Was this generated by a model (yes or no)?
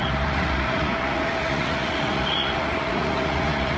yes